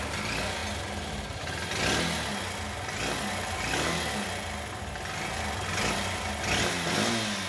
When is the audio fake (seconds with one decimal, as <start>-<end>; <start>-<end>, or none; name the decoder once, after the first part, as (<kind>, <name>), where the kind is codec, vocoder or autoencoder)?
none